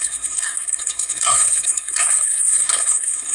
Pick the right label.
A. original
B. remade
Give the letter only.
B